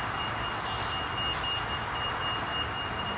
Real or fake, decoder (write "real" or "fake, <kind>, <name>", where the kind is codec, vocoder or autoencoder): real